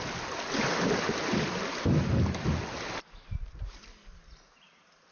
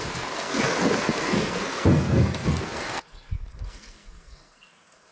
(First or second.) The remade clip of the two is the second